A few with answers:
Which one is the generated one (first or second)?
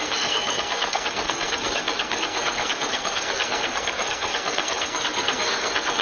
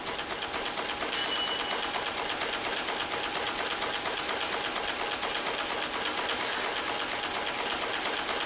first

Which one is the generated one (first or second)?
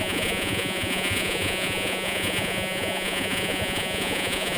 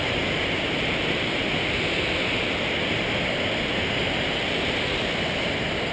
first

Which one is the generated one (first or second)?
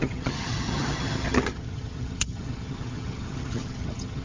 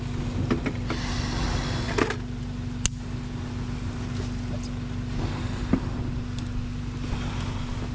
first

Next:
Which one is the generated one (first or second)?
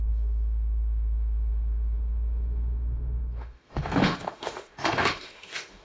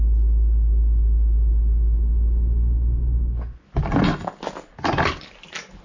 first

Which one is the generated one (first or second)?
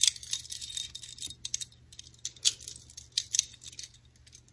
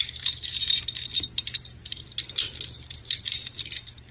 second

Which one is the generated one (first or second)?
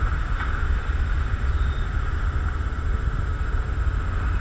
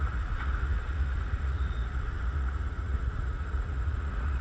second